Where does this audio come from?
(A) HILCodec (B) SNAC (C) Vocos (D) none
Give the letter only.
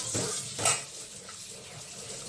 D